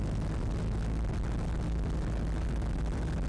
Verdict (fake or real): real